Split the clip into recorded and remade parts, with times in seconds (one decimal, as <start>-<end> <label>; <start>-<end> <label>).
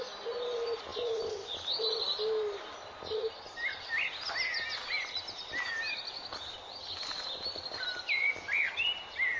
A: 0.0-9.4 recorded